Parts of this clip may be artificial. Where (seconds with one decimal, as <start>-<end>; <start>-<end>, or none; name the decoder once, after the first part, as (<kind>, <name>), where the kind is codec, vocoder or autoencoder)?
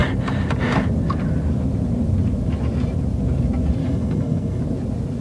3.8-4.6 (codec, SNAC)